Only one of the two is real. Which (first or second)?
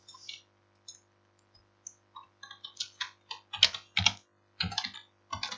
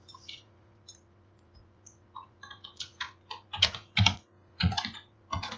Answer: first